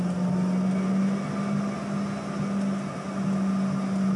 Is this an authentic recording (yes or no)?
yes